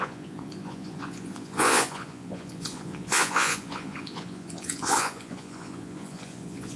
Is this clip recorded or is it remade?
remade